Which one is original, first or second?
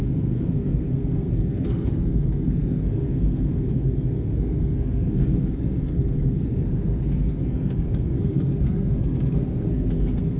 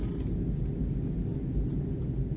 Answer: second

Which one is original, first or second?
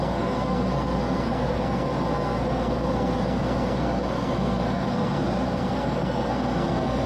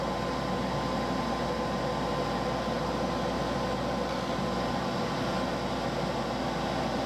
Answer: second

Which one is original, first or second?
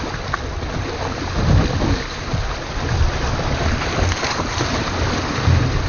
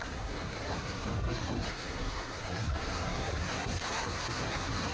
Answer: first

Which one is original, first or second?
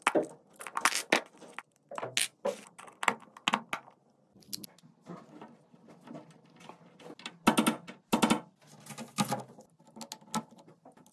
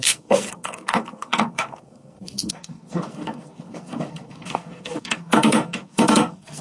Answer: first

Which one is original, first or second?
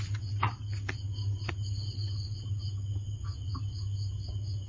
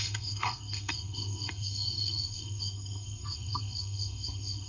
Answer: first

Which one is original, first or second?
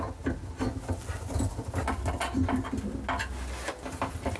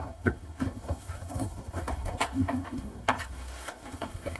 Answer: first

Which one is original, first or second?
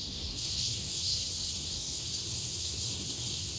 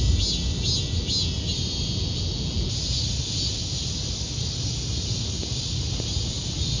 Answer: second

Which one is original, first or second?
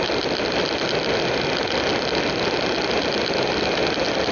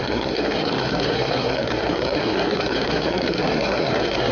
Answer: first